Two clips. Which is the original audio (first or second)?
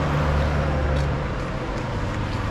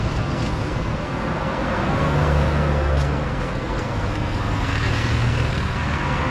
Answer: first